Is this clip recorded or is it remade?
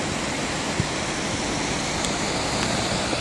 recorded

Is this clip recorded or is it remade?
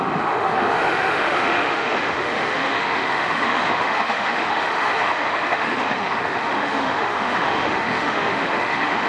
remade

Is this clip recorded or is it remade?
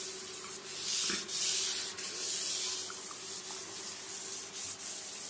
recorded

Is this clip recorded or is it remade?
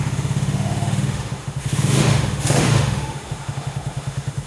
remade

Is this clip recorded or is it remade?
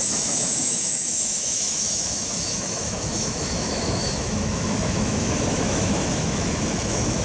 remade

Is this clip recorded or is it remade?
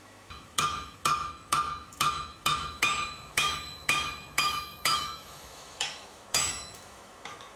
remade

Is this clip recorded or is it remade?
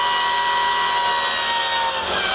recorded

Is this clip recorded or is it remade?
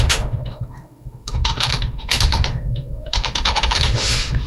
remade